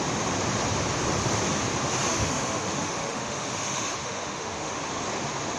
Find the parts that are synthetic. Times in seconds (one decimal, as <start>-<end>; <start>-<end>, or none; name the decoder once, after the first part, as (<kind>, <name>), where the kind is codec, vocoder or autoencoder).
2.1-4.8 (autoencoder, DAC-VAE)